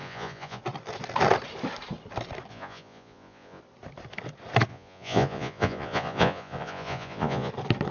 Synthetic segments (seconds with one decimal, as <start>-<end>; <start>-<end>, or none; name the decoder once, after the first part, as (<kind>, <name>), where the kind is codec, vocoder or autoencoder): 0.0-0.6 (vocoder, Vocos); 2.5-3.6; 4.7-7.5

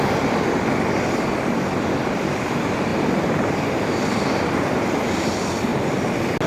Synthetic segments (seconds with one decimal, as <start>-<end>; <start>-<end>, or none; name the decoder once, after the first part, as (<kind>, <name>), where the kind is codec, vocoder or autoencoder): 2.9-5.0 (vocoder, BigVGAN v2)

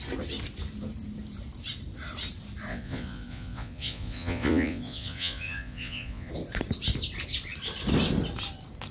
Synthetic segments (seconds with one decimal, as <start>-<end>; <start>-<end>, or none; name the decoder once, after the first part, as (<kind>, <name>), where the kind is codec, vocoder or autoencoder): 2.7-6.3 (vocoder, Vocos)

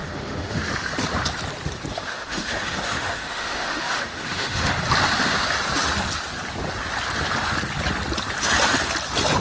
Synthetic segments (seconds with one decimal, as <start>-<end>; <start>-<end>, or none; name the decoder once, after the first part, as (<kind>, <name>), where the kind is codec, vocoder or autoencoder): 0.0-0.6 (autoencoder, DAC-VAE); 1.9-4.7